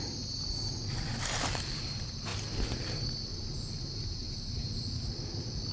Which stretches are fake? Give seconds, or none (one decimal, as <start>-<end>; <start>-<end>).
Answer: 1.1-1.8; 3.3-4.8